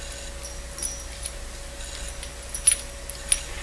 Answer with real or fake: real